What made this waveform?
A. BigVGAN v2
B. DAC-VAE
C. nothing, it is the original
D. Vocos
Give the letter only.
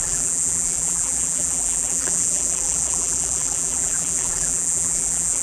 A